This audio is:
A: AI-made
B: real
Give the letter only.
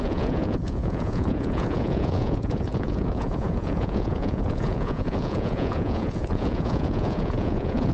A